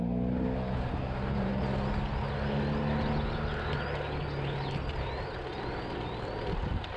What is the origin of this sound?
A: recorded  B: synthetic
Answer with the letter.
A